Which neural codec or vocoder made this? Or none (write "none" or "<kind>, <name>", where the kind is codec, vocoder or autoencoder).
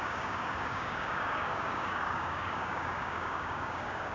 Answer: codec, DAC